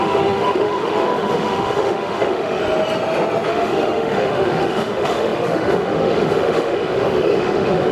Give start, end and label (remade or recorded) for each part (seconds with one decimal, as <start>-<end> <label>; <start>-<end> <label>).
0.0-2.6 remade; 2.6-3.5 recorded; 3.5-7.9 remade